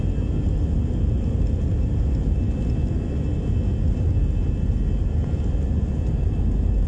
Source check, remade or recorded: recorded